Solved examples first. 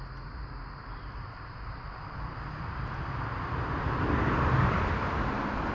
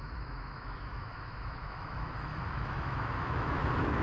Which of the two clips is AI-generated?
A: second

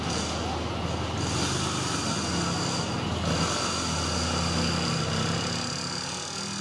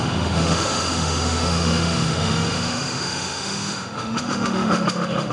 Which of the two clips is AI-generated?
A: second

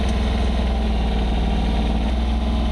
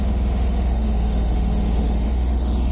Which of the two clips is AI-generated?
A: second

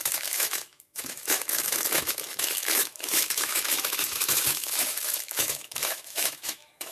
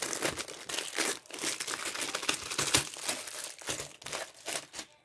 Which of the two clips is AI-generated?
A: first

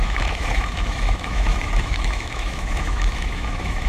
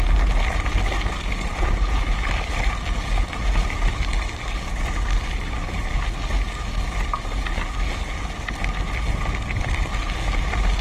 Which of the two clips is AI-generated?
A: first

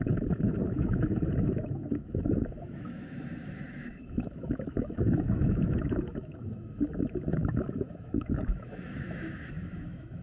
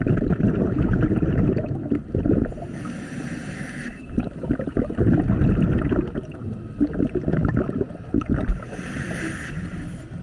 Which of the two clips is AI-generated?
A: first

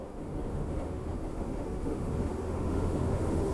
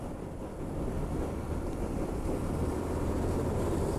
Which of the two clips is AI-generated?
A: first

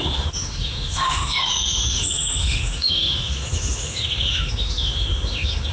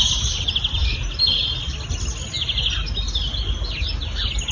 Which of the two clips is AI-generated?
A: first